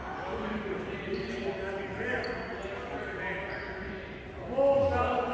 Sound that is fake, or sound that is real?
real